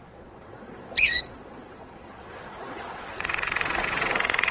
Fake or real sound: fake